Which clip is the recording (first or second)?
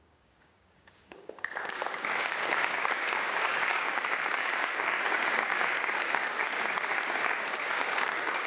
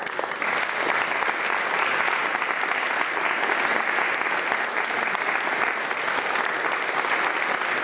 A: second